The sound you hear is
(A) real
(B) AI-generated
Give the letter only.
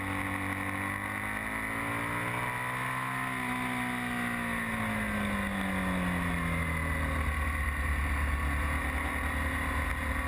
A